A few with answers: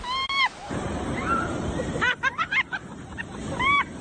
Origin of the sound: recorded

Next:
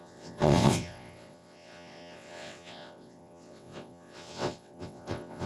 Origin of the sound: remade